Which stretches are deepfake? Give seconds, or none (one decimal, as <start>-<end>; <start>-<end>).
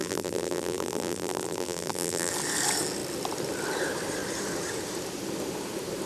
0.0-2.3